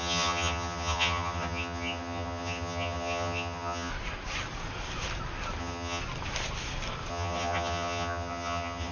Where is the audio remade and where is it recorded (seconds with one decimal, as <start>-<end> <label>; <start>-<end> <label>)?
0.0-3.9 remade; 3.9-5.6 recorded; 5.6-6.0 remade; 6.0-7.1 recorded; 7.1-8.9 remade